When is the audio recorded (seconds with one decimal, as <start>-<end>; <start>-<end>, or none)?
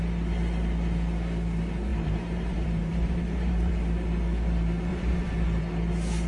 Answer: 0.0-1.9; 3.7-4.9; 5.6-6.3